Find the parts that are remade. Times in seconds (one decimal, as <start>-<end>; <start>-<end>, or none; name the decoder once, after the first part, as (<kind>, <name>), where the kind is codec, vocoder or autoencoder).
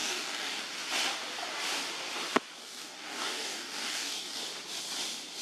0.0-0.6 (codec, DAC); 2.6-4.4